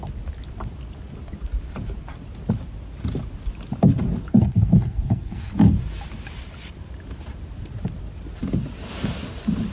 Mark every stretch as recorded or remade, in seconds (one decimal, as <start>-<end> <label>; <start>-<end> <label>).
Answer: 0.0-4.3 recorded; 4.3-5.5 remade; 5.5-9.7 recorded